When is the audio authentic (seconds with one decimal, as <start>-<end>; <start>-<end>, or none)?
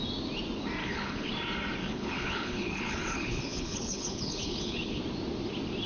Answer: 0.0-0.8; 1.3-1.8; 5.0-5.9